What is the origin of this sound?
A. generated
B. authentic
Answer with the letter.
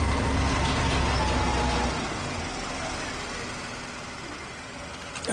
B